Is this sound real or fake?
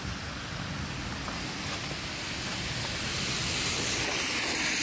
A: real